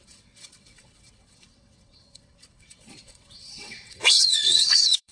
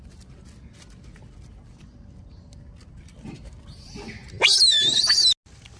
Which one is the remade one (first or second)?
first